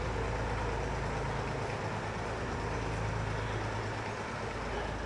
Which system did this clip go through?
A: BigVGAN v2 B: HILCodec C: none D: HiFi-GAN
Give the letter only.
C